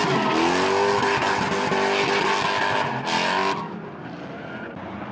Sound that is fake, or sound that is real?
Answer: real